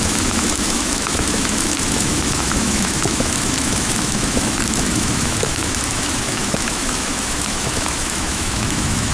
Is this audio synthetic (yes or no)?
yes